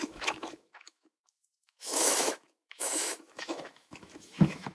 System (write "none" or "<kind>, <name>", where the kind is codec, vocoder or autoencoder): autoencoder, DAC-VAE